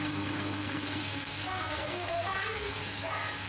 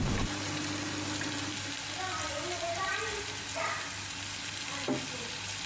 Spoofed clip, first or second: first